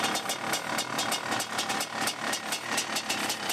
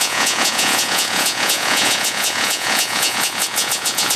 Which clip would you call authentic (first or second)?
first